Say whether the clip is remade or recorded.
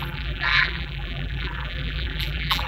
remade